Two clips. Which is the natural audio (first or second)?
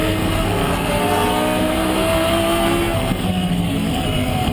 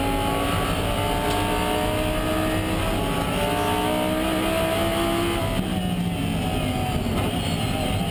second